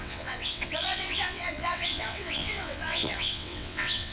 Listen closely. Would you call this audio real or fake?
fake